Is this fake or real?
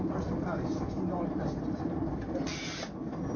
real